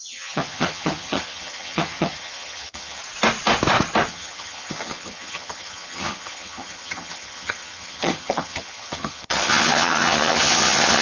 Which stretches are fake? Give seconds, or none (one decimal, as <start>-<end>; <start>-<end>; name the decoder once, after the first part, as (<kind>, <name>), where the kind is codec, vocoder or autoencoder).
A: 0.0-3.0 (vocoder, HiFi-GAN); 4.1-11.0